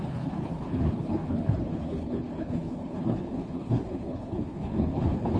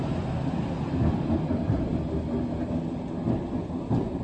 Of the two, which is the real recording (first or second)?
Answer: second